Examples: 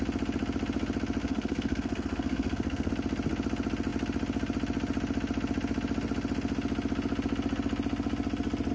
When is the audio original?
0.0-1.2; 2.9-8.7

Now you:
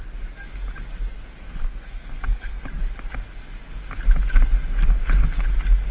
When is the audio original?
0.0-1.4; 2.6-5.9

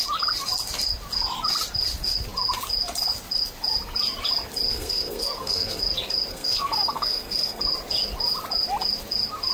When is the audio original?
0.0-4.7; 5.8-6.3; 7.6-9.5

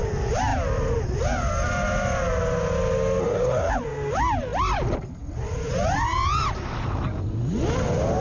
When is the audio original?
0.0-3.2; 3.7-8.2

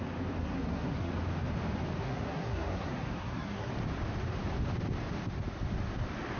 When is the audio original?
0.0-0.4; 1.1-2.0; 3.7-6.4

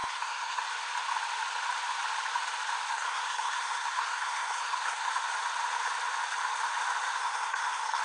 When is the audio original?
0.6-2.9; 5.1-7.1